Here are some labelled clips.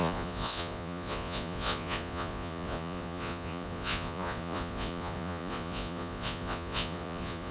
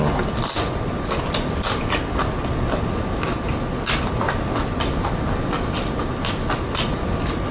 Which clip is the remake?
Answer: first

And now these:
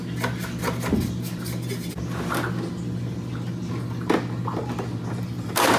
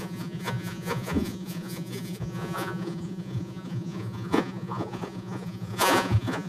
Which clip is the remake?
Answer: second